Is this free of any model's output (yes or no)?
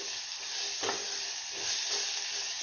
yes